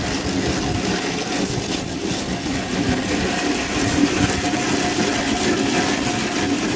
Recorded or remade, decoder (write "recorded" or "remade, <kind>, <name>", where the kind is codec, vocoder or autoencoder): recorded